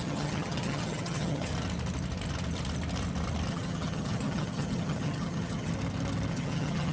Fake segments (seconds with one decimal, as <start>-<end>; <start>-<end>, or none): 0.0-1.5; 3.5-5.7; 6.3-6.9